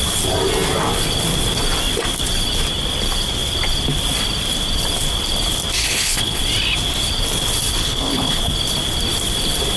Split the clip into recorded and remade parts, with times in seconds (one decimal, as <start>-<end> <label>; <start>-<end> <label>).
0.0-5.8 recorded; 5.8-6.4 remade; 6.4-7.8 recorded; 7.8-8.4 remade; 8.4-9.8 recorded